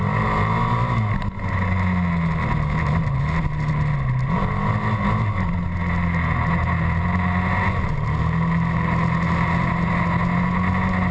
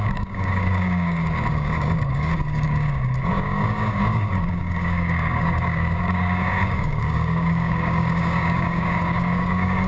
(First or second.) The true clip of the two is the first